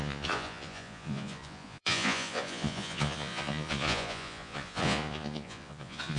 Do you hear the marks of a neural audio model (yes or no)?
yes